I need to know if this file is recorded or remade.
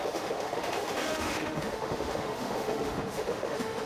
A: remade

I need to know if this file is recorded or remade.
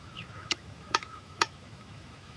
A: remade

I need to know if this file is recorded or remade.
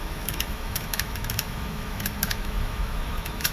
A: remade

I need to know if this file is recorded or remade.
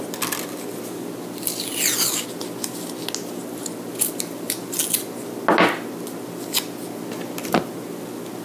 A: recorded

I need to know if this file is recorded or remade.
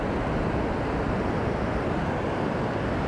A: recorded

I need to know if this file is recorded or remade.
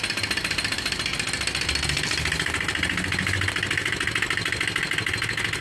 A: recorded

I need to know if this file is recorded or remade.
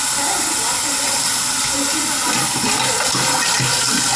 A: recorded